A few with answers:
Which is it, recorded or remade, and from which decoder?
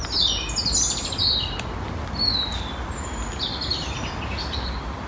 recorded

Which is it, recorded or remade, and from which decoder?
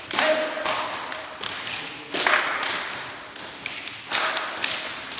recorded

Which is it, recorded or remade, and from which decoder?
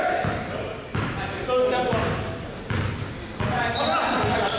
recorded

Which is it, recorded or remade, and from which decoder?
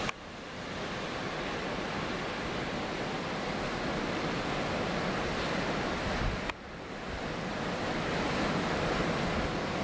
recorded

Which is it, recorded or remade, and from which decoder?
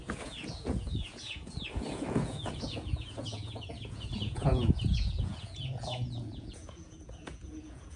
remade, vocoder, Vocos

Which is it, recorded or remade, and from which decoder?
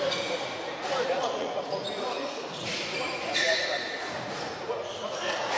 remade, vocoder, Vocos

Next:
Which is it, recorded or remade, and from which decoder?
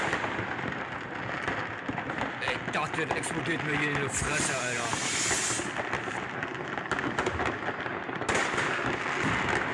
recorded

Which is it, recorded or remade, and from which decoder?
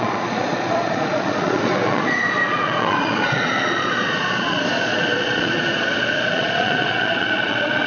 remade, vocoder, Vocos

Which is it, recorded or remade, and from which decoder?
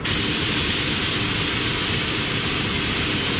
recorded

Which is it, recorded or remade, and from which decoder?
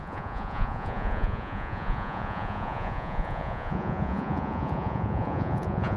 remade, vocoder, Vocos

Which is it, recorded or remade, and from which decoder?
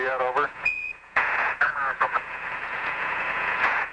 remade, vocoder, Vocos